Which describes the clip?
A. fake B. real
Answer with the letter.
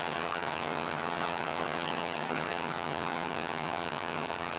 A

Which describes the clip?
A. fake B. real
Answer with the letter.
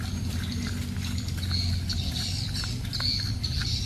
B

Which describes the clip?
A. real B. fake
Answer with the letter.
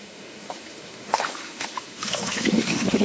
B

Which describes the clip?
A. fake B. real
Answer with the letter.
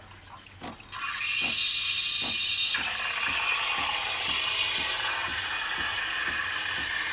B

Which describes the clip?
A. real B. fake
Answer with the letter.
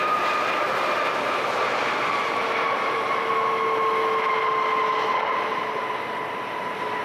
A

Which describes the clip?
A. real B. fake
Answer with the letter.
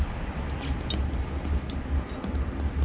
A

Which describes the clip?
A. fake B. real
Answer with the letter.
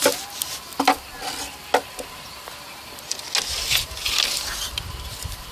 B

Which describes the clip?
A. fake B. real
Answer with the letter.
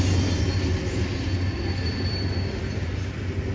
B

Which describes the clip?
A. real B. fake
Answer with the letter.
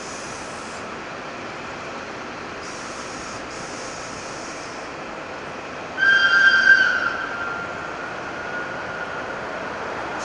A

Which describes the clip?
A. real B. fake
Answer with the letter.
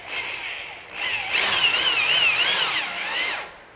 A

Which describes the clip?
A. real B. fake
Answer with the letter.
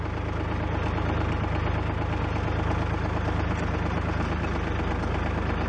A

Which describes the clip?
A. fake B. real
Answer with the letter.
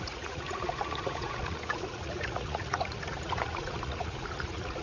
A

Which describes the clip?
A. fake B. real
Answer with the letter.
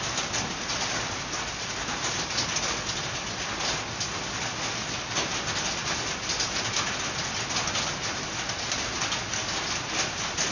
B